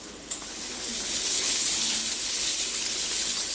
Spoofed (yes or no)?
yes